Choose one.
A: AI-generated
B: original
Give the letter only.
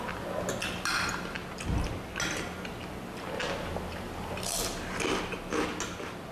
B